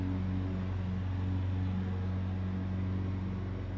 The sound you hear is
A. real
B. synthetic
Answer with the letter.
A